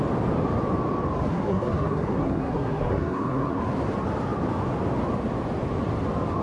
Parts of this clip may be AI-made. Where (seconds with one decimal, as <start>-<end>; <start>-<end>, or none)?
1.3-3.6